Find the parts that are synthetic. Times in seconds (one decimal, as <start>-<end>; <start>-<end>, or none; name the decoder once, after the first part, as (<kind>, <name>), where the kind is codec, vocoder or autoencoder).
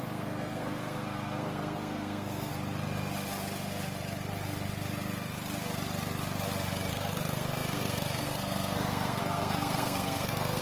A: 0.0-2.5 (codec, SNAC); 6.9-10.6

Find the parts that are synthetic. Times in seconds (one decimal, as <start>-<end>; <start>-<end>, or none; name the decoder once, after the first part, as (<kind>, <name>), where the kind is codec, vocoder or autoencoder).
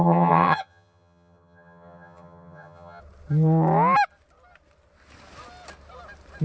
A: 0.0-3.0 (vocoder, HiFi-GAN)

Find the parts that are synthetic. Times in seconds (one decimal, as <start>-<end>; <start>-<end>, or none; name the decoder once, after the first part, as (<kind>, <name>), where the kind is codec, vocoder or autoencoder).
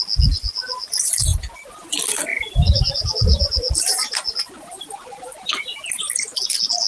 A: 2.3-6.4 (vocoder, BigVGAN v2)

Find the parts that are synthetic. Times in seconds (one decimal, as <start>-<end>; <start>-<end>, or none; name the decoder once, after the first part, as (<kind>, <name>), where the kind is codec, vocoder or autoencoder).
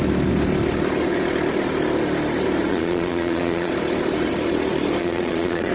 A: 2.7-3.7 (vocoder, Vocos); 5.0-5.7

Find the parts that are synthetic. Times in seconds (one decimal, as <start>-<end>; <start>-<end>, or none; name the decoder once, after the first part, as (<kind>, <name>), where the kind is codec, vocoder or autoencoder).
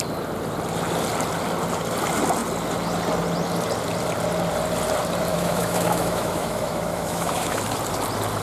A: 5.3-7.6 (autoencoder, DAC-VAE)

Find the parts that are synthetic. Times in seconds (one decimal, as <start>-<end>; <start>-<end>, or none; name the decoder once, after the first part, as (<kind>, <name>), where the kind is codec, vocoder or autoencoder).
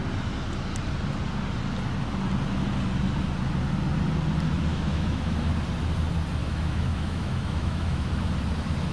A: 4.7-5.5 (autoencoder, DAC-VAE); 6.4-8.1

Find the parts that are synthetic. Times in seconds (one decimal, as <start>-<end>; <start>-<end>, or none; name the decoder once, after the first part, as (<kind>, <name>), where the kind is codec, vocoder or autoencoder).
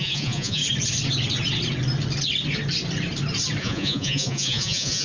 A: 0.0-0.6 (vocoder, Vocos); 3.6-5.0